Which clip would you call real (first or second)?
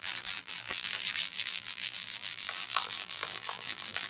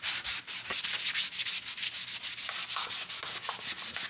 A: second